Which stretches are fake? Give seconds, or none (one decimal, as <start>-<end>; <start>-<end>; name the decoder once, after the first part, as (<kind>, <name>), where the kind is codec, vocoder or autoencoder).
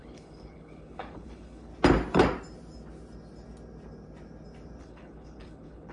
0.0-1.7 (codec, HILCodec); 4.8-5.9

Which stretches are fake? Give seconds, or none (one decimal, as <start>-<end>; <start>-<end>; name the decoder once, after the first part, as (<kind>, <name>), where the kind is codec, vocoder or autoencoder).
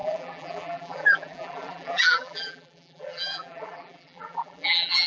0.0-5.1 (vocoder, BigVGAN v2)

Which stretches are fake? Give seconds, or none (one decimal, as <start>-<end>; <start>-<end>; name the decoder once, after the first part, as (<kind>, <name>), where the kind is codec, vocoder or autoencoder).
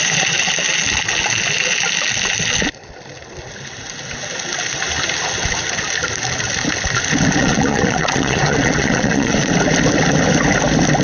7.4-9.5 (vocoder, Vocos)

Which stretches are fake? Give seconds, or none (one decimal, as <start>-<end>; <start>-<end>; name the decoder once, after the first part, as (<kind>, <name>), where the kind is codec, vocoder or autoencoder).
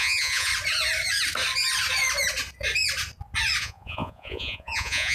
0.0-0.5 (vocoder, Vocos); 3.6-5.1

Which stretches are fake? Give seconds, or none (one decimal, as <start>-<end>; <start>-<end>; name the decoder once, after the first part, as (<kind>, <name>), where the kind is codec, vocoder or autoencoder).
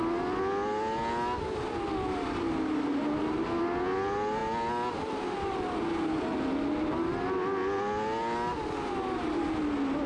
none